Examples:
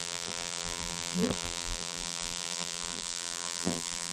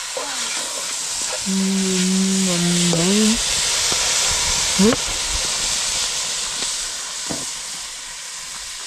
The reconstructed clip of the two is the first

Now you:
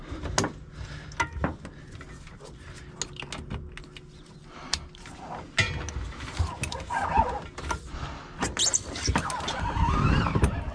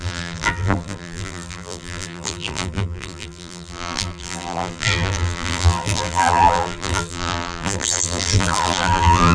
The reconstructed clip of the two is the second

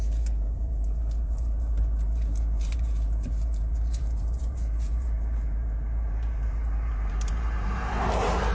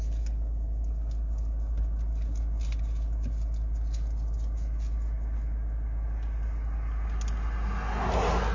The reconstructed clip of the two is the first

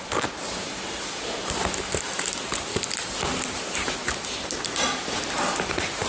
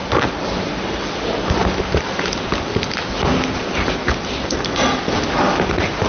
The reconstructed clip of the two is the first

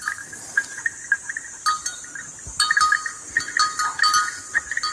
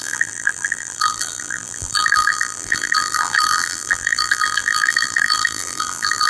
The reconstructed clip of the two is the second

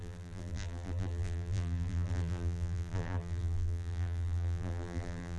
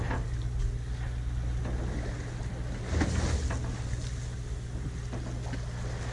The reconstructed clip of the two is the first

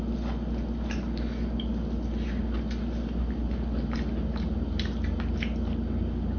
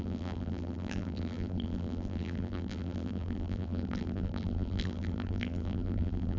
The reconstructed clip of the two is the second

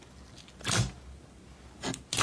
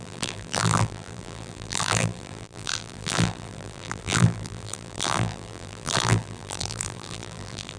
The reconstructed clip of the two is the second